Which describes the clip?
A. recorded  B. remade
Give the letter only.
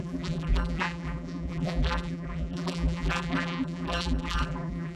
B